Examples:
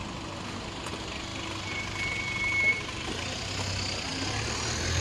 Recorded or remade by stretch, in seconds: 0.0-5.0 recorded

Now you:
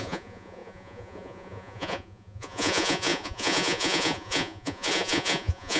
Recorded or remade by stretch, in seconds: 0.0-5.8 remade

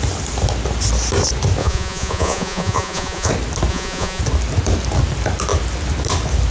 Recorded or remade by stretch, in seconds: 0.0-1.6 recorded; 1.6-3.3 remade; 3.3-3.7 recorded; 3.7-4.2 remade; 4.2-6.5 recorded

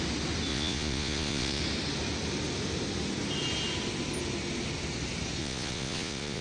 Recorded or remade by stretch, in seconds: 0.0-0.5 recorded; 0.5-1.6 remade; 1.6-5.4 recorded; 5.4-6.4 remade

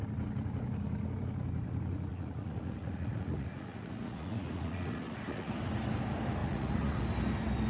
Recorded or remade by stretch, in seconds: 0.0-2.1 recorded; 2.1-5.5 remade; 5.5-6.4 recorded; 6.4-7.0 remade; 7.0-7.7 recorded

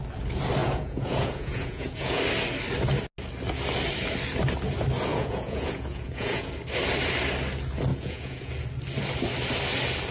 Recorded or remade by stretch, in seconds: 0.0-0.6 recorded; 0.6-2.2 remade; 2.2-5.1 recorded; 5.1-6.5 remade; 6.5-7.9 recorded; 7.9-8.5 remade; 8.5-10.1 recorded